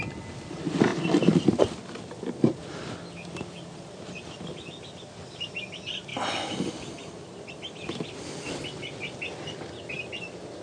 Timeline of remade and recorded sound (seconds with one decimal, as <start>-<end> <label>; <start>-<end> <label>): 0.0-10.6 recorded